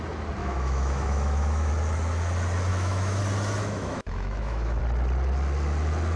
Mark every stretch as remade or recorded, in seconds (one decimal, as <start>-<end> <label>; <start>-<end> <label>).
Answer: 0.0-0.4 recorded; 0.4-1.7 remade; 1.7-2.7 recorded; 2.7-3.2 remade; 3.2-3.6 recorded; 3.6-4.8 remade; 4.8-6.2 recorded